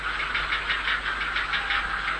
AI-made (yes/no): no